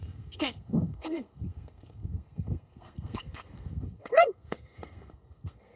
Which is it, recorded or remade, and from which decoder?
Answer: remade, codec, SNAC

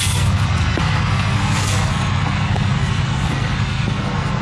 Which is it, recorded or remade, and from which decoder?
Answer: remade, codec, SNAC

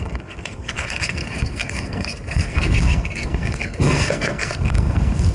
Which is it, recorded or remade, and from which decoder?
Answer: remade, codec, SNAC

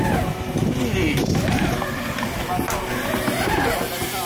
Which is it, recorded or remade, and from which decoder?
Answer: recorded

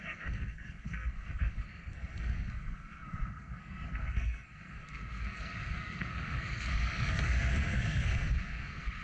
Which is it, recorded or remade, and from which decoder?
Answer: remade, codec, SNAC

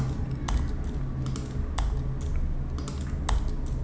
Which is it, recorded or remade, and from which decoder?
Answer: recorded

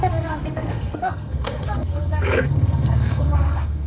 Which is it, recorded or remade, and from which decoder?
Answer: remade, codec, SNAC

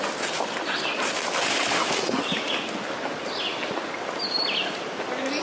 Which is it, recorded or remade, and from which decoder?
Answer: recorded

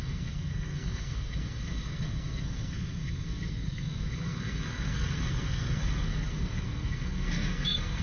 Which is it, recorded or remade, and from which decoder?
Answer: remade, codec, SNAC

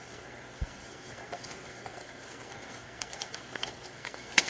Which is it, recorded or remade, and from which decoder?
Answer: remade, codec, SNAC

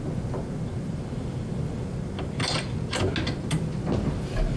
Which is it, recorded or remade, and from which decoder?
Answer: recorded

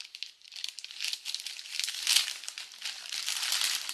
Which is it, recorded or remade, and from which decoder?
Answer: recorded